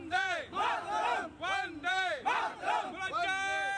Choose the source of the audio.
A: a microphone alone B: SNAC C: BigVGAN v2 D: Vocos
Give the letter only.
A